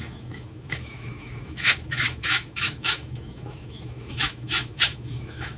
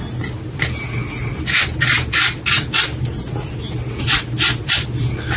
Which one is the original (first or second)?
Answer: second